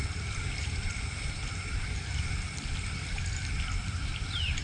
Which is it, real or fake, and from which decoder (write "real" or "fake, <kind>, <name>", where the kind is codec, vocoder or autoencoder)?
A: real